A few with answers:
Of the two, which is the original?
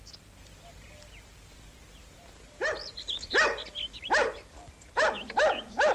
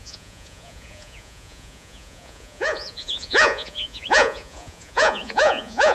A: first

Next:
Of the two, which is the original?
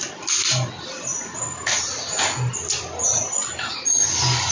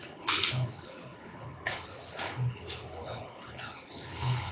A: first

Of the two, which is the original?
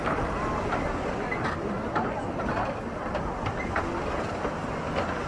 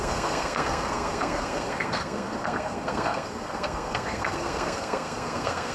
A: first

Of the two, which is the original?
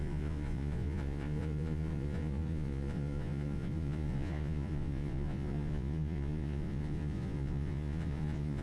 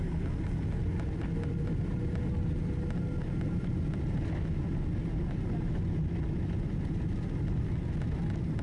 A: second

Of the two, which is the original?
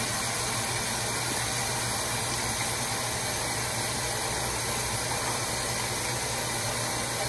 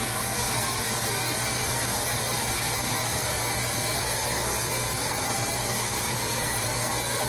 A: first